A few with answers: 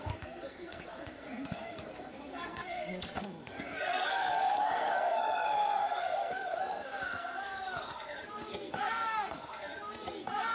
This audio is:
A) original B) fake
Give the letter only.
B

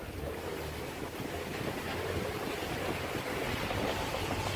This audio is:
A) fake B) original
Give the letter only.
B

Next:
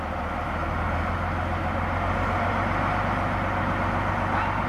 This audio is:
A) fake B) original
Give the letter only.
B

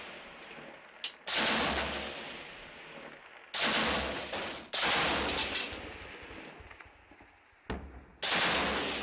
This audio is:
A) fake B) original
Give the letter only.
B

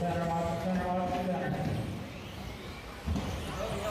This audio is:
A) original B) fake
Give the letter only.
A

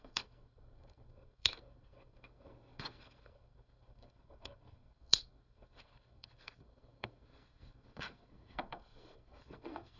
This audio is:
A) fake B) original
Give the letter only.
A